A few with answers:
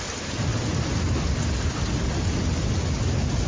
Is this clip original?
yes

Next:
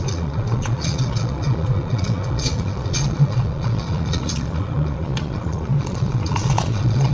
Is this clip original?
no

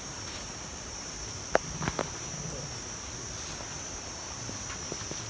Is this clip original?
yes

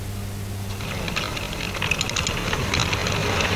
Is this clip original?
yes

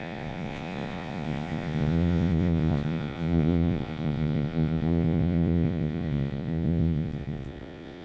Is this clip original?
no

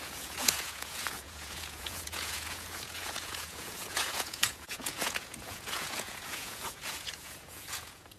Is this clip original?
no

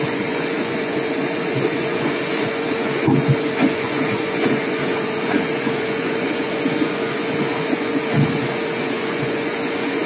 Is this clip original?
no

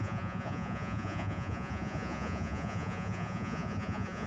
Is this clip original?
no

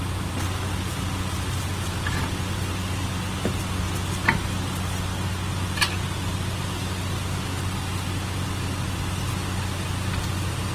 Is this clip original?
yes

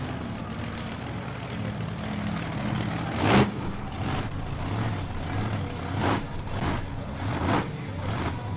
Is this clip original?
yes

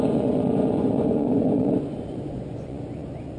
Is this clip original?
no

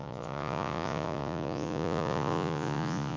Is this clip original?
no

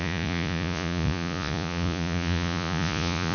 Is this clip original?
no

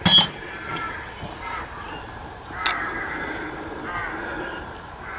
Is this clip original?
yes